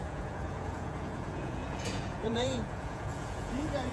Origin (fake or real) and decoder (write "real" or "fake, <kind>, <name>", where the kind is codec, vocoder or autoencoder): fake, vocoder, Vocos